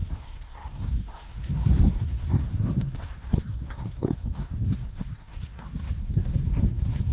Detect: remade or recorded remade